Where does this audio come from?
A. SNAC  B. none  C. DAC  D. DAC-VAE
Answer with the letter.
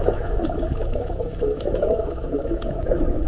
D